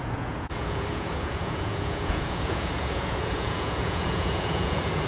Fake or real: fake